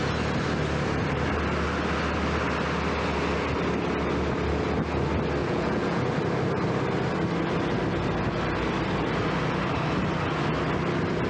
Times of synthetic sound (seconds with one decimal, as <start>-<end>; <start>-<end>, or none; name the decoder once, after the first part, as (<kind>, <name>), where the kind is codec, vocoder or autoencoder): 5.4-6.2 (vocoder, Vocos)